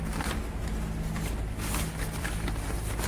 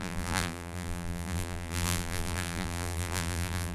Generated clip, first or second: second